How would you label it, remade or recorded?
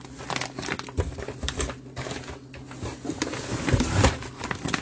recorded